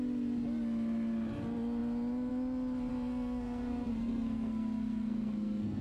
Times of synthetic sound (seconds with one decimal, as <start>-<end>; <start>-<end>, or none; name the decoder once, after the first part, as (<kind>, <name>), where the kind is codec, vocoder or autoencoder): 2.9-5.8 (codec, SNAC)